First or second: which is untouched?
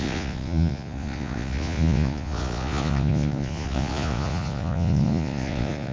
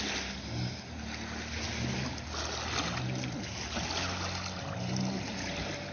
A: second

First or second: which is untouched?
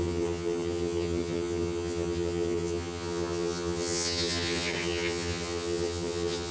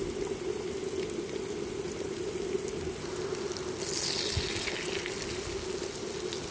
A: second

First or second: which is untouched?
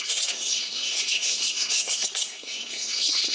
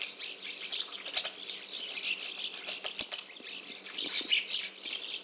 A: second